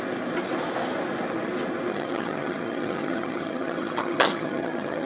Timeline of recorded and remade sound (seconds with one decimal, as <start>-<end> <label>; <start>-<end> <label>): 0.0-1.9 recorded; 1.9-5.1 remade